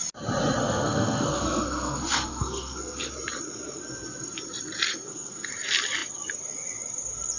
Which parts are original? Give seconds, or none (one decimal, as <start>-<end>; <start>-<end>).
0.0-0.6; 3.1-4.9; 5.5-7.4

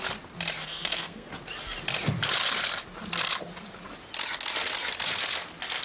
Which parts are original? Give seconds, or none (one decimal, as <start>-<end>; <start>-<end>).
0.0-0.6; 1.3-5.8